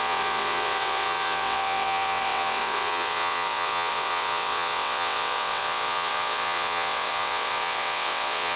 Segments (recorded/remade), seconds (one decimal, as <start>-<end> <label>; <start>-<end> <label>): 0.0-8.6 remade